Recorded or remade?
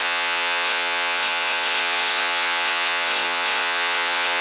remade